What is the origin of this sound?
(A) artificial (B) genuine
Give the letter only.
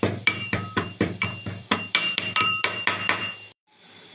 A